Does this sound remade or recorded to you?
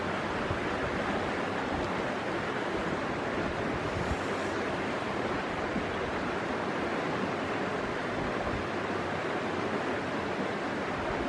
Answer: recorded